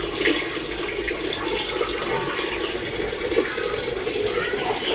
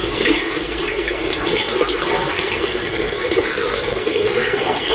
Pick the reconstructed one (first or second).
second